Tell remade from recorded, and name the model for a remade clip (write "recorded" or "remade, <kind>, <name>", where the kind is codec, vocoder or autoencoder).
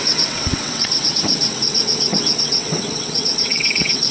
remade, vocoder, WaveNeXt